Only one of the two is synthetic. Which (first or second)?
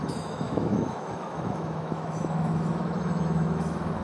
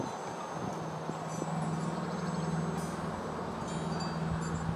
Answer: first